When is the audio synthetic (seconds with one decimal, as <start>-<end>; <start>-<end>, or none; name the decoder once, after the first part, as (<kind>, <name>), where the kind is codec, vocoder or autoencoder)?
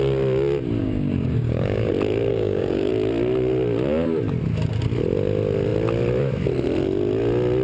0.8-1.9 (codec, DAC); 2.3-2.9